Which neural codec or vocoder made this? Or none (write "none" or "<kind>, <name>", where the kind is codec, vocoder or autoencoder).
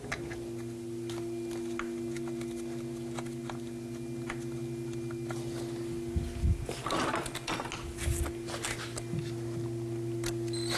none